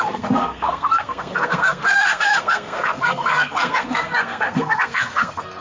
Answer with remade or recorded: remade